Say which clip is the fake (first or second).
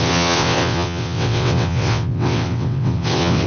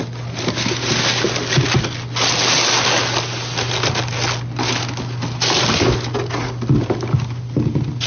first